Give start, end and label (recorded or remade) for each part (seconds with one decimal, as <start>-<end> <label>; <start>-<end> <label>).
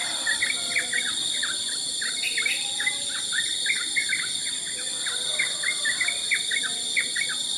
0.0-7.6 recorded